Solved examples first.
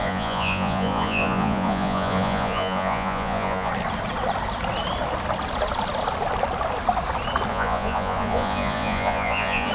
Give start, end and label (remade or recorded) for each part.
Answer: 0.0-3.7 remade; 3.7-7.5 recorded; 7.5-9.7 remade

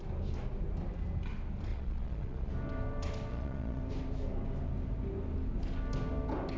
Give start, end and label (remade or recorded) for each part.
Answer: 0.0-1.7 recorded; 1.7-2.5 remade; 2.5-3.3 recorded; 3.3-3.8 remade; 3.8-6.6 recorded

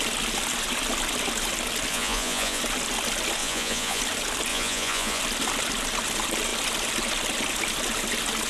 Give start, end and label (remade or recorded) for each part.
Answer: 0.0-1.9 recorded; 1.9-2.6 remade; 2.6-3.4 recorded; 3.4-4.0 remade; 4.0-4.5 recorded; 4.5-5.2 remade; 5.2-8.5 recorded

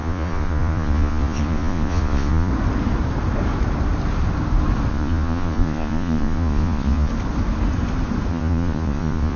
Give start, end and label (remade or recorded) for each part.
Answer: 0.0-2.5 remade; 2.5-4.9 recorded; 4.9-7.1 remade; 7.1-8.3 recorded; 8.3-9.4 remade

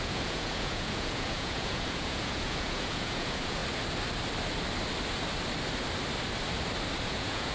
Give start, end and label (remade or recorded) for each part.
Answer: 0.0-3.6 remade; 3.6-7.0 recorded; 7.0-7.5 remade

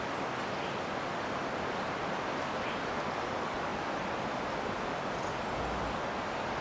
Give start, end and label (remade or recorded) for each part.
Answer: 0.0-6.6 recorded

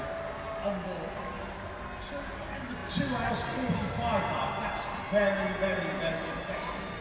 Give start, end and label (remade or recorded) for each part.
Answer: 0.0-7.0 recorded